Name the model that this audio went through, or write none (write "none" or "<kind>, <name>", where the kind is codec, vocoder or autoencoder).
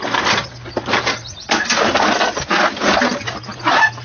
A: none